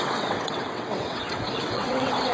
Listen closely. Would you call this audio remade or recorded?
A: remade